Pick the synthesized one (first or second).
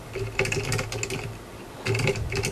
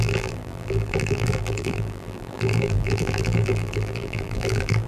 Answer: second